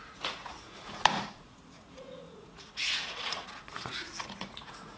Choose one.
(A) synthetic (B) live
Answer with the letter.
A